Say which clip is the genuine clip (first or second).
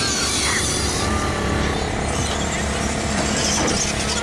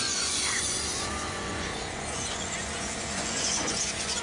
first